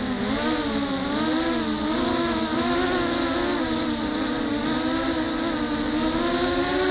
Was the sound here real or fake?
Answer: real